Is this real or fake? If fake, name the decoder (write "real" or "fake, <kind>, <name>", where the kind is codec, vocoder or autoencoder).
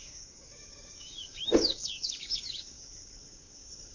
fake, codec, DAC